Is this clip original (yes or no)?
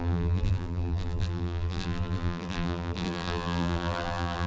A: no